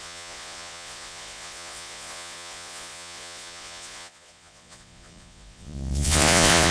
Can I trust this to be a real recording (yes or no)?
no